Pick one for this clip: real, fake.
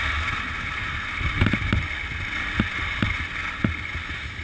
real